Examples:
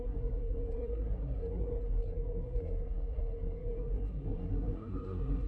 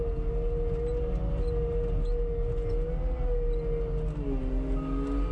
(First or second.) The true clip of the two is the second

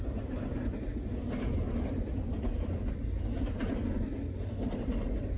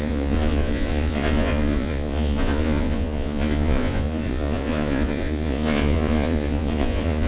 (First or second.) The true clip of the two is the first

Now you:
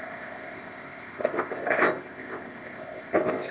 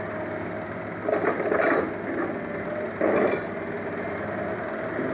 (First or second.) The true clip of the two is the second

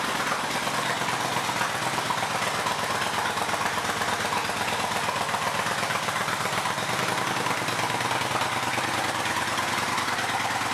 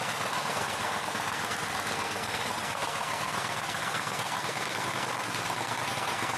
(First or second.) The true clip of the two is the first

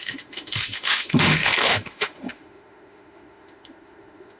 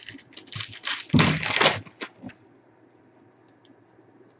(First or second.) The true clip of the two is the second